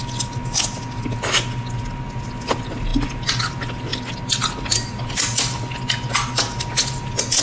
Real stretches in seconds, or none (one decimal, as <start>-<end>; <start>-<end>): 0.0-7.4